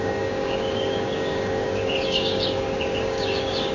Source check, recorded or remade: remade